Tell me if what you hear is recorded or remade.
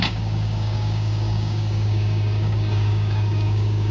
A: remade